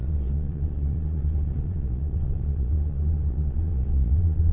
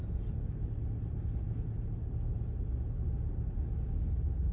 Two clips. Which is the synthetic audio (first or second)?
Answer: first